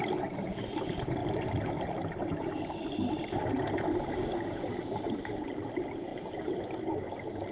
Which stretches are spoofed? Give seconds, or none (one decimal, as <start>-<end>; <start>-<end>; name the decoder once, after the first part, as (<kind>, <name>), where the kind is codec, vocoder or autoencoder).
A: none